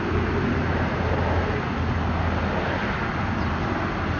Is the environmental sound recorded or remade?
recorded